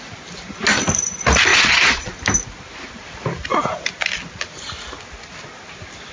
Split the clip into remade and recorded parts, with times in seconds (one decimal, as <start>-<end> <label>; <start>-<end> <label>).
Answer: 0.0-1.5 recorded; 1.5-2.2 remade; 2.2-6.1 recorded